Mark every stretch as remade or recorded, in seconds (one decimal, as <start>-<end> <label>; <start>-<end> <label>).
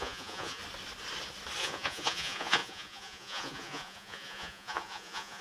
0.0-0.6 remade; 0.6-1.6 recorded; 1.6-5.4 remade